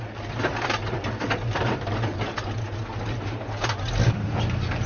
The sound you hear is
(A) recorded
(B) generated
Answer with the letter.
A